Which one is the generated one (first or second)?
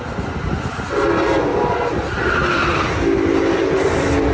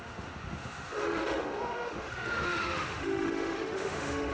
second